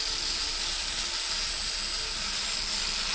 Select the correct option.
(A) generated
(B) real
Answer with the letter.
B